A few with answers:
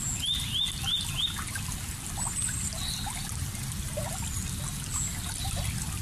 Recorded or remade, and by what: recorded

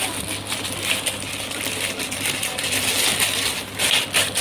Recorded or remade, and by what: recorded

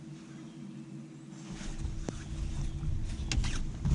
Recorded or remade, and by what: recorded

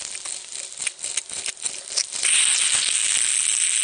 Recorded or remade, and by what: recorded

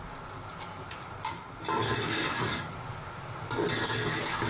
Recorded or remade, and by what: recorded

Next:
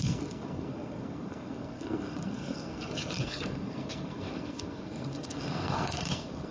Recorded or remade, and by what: remade, codec, SNAC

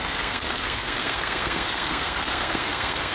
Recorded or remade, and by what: remade, codec, SNAC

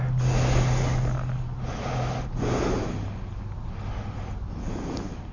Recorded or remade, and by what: recorded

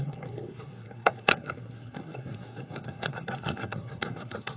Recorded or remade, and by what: remade, codec, SNAC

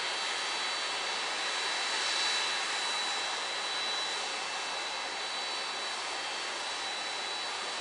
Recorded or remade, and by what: recorded